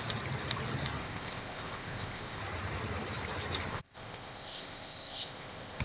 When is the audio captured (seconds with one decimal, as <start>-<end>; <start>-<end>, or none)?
0.0-1.0; 2.4-3.7